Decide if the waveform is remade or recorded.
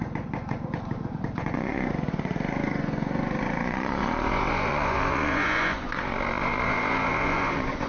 remade